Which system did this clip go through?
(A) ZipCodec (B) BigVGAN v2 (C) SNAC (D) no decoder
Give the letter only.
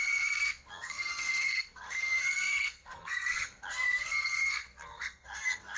C